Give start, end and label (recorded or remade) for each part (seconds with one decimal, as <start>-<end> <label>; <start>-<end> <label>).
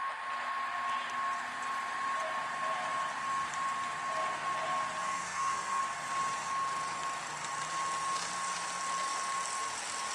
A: 0.0-5.0 recorded; 5.0-5.8 remade; 5.8-10.1 recorded